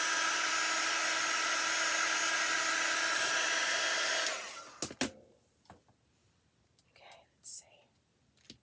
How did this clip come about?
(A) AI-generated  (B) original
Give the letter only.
B